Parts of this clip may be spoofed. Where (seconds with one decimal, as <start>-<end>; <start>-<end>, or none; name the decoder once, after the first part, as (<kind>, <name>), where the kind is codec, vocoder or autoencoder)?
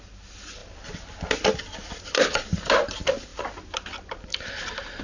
none